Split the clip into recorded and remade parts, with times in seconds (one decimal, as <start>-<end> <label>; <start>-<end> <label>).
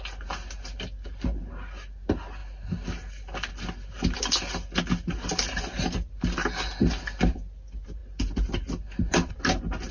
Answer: 0.0-9.9 recorded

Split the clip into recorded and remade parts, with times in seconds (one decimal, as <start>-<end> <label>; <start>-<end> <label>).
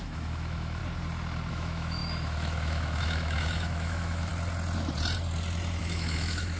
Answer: 0.0-0.8 remade; 0.8-1.5 recorded; 1.5-4.3 remade; 4.3-5.8 recorded; 5.8-6.6 remade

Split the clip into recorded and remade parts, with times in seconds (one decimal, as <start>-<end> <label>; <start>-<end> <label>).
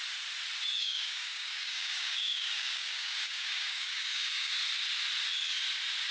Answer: 0.0-0.8 recorded; 0.8-4.5 remade; 4.5-6.1 recorded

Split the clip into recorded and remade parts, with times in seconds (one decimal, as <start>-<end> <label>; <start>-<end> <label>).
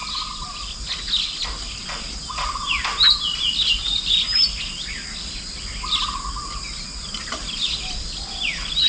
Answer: 0.0-8.9 recorded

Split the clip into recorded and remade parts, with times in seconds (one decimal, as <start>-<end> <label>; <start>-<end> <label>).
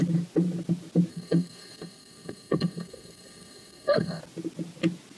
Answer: 0.0-1.1 recorded; 1.1-4.2 remade; 4.2-5.2 recorded